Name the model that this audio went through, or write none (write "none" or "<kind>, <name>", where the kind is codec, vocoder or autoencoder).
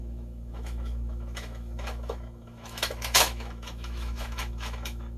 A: autoencoder, DAC-VAE